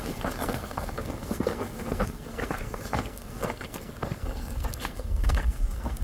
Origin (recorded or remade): remade